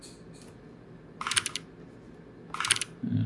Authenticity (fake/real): real